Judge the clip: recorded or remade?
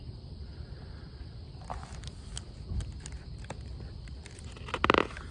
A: recorded